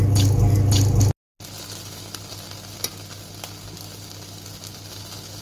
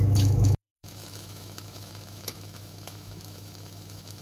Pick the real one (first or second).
first